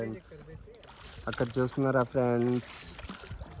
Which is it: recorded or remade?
recorded